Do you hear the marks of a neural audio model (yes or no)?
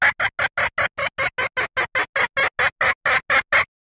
no